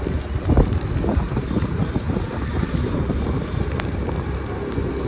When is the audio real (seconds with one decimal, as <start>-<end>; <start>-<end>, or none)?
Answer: 0.0-1.1; 4.0-5.1